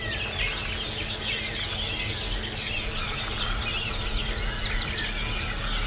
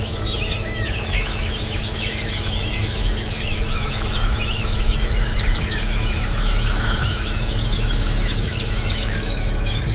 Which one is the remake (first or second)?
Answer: second